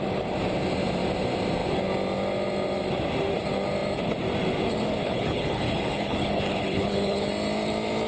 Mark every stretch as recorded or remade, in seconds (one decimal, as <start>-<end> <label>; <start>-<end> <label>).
0.0-5.0 recorded; 5.0-7.3 remade; 7.3-8.1 recorded